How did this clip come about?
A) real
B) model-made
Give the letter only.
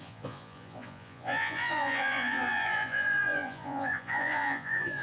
B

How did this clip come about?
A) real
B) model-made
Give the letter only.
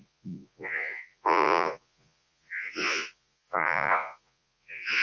B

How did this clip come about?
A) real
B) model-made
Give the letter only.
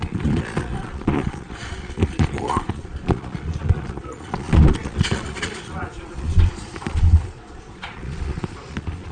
B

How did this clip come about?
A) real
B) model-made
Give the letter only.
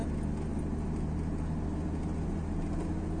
A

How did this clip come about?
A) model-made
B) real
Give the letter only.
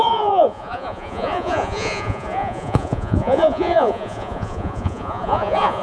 A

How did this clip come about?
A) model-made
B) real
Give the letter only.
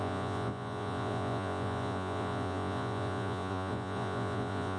A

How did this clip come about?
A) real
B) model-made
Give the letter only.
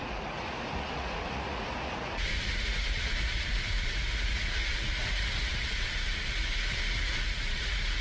B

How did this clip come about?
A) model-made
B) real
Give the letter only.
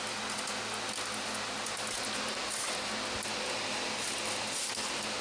B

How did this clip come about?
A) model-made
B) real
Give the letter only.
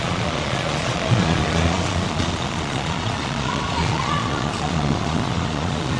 A